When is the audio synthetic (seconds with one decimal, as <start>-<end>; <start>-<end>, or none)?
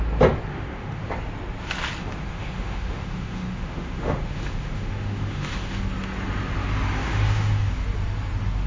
0.5-1.1; 2.0-5.8; 7.0-7.7